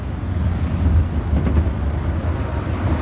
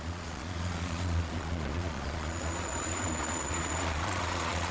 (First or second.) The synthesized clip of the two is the second